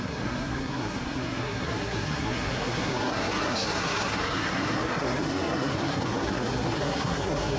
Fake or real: fake